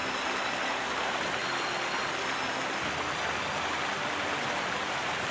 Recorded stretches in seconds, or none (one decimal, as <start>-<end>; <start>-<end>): 0.0-0.7; 1.4-4.6